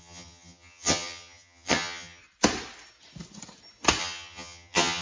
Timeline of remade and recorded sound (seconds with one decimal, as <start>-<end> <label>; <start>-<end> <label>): 0.0-2.2 remade; 2.2-4.0 recorded; 4.0-5.0 remade